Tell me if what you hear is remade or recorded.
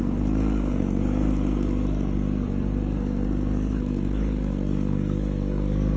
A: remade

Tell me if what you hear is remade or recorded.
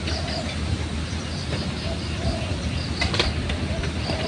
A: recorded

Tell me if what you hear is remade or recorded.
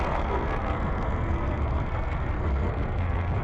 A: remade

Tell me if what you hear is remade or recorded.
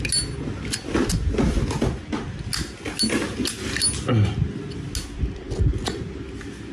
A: recorded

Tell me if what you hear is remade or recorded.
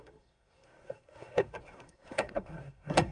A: remade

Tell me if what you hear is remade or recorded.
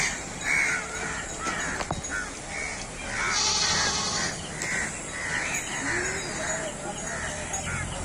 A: recorded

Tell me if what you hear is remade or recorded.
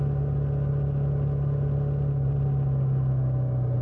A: recorded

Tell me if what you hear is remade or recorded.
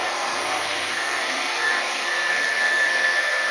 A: remade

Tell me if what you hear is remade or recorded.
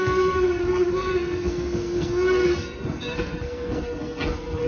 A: remade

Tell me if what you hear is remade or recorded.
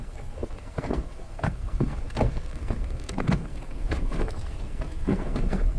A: remade